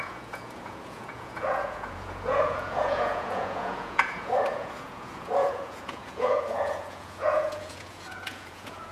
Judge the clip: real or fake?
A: fake